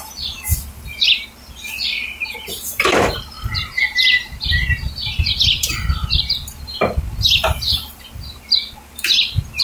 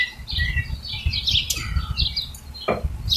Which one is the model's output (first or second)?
first